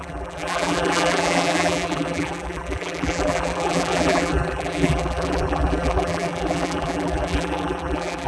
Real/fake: fake